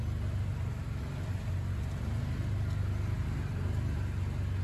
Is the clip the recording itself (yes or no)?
yes